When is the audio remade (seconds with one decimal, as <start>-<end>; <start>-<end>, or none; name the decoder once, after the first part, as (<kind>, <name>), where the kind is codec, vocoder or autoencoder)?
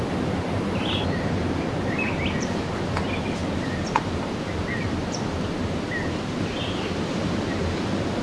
none